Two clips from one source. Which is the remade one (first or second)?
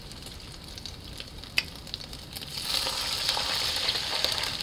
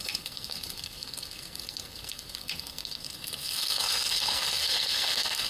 second